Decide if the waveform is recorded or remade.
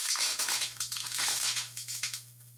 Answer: remade